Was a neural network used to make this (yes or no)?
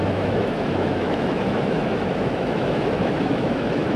yes